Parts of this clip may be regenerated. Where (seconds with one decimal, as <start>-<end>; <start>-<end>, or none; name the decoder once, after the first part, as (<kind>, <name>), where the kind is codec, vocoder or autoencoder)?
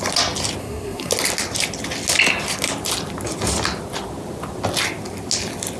0.6-1.1 (codec, SNAC)